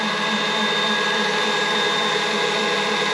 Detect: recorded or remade recorded